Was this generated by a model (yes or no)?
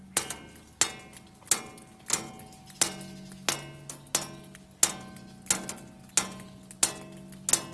no